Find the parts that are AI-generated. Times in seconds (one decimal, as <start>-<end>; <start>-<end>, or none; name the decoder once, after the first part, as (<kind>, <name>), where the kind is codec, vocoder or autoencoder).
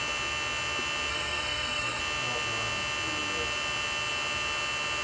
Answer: 1.1-2.0 (codec, SNAC)